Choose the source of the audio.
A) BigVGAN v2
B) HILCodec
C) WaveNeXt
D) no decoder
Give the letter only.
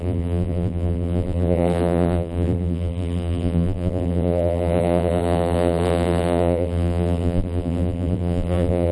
A